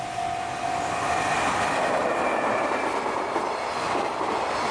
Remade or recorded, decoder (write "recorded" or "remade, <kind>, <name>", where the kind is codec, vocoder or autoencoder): recorded